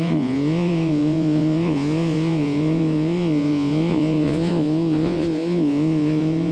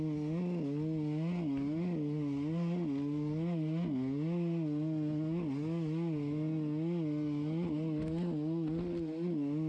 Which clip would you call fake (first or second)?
first